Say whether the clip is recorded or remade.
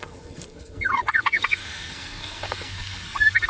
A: remade